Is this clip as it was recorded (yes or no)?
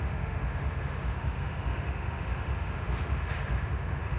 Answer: no